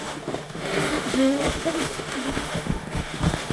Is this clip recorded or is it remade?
remade